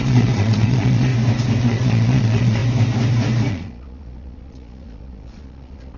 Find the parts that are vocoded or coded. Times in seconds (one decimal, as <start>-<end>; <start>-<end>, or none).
0.0-1.1; 1.6-2.6; 3.5-6.0